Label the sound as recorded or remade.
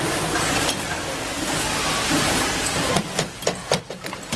recorded